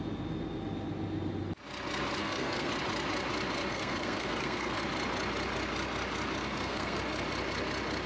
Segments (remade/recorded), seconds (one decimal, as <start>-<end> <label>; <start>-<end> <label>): 0.0-2.2 recorded; 2.2-2.7 remade; 2.7-3.7 recorded; 3.7-4.8 remade; 4.8-6.4 recorded; 6.4-7.0 remade; 7.0-8.1 recorded